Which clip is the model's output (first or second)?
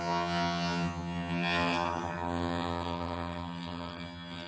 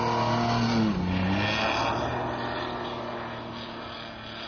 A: first